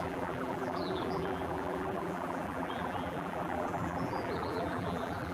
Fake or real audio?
fake